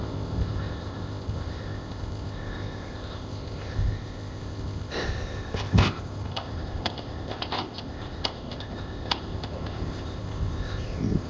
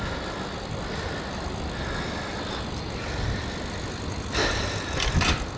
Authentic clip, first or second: second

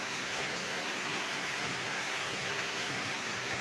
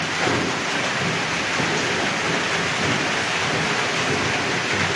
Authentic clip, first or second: second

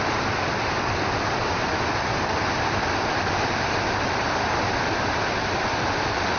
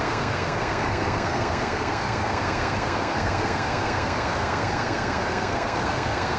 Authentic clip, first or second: first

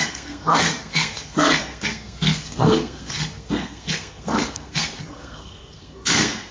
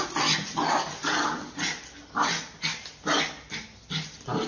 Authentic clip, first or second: second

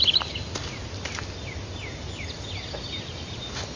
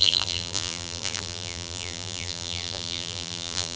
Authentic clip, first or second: first